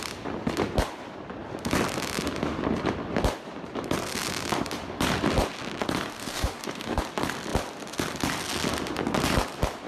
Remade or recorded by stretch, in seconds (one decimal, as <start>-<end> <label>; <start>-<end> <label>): 0.0-6.1 recorded; 6.1-7.0 remade; 7.0-9.9 recorded